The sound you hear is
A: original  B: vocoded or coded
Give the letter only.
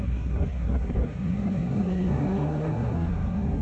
B